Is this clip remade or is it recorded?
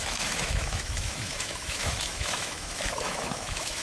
remade